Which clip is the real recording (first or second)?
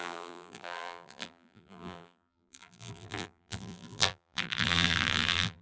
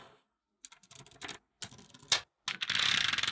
second